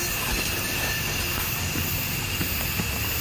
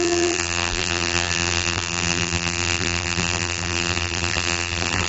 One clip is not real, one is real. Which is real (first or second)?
first